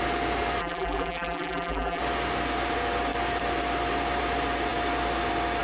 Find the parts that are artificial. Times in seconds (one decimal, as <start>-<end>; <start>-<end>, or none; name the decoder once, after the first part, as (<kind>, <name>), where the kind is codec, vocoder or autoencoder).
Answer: 0.6-2.0 (vocoder, BigVGAN v2)